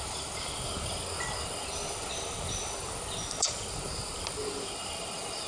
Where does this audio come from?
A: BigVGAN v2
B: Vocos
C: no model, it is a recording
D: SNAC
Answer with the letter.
C